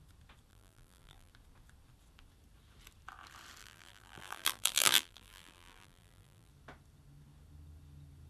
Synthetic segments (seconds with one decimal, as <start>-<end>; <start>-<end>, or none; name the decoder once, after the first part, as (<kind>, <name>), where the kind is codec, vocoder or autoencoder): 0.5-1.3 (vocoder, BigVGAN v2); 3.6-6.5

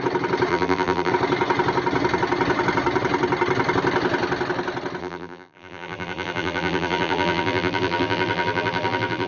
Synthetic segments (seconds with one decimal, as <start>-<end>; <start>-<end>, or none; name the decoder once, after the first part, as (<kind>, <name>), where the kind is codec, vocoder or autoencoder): 0.5-1.1 (vocoder, BigVGAN v2); 5.0-9.3

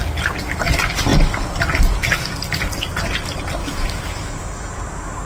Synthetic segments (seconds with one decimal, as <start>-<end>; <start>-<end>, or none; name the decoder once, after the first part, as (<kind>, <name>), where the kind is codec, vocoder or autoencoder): 3.6-4.7 (autoencoder, DAC-VAE)

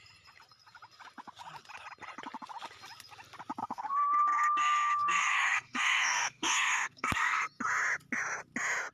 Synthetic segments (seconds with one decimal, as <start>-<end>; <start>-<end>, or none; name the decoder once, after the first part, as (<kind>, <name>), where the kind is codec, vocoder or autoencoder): 3.6-7.6 (codec, SNAC)

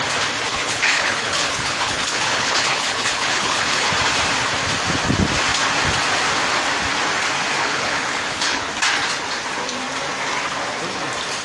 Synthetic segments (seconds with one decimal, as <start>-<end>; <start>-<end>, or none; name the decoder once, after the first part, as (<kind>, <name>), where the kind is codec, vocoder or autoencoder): 0.5-3.9 (codec, HILCodec); 7.6-8.7

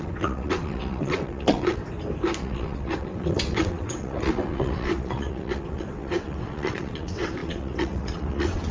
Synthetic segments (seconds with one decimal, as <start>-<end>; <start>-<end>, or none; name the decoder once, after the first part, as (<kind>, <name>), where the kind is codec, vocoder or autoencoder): 0.0-1.8 (vocoder, WaveNeXt); 2.4-8.7

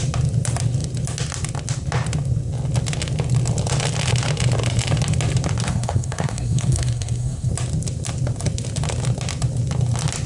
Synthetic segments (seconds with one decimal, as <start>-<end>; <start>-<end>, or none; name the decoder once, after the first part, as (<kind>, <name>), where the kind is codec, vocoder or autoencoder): 5.7-7.5 (codec, SNAC)